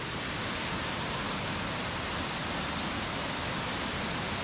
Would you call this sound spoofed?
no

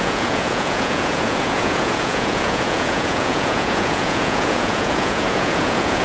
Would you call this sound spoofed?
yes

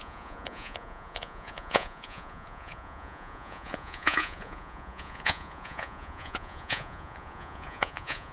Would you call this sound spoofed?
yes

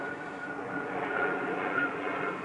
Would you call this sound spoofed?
yes